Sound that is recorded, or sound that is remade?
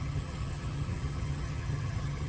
remade